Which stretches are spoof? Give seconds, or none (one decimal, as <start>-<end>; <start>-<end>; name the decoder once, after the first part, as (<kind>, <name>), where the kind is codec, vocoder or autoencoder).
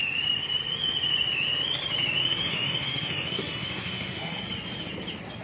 2.2-4.4 (autoencoder, DAC-VAE)